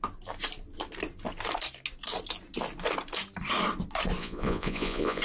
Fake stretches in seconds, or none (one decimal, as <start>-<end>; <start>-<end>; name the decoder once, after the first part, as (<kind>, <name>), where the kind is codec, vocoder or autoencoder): 4.2-5.2 (vocoder, Vocos)